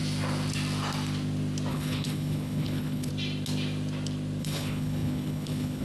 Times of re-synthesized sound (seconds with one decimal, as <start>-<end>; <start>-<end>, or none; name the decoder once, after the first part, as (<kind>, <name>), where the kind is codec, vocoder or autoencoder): 1.7-3.1 (codec, HILCodec); 4.4-5.8